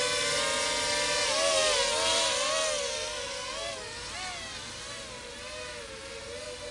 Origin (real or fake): real